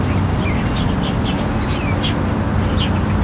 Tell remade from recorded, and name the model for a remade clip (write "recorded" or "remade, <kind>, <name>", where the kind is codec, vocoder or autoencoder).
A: recorded